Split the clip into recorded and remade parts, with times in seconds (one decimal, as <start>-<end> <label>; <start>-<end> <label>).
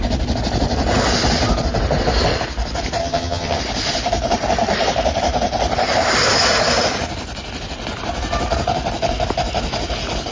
0.0-3.0 recorded; 3.0-3.6 remade; 3.6-10.3 recorded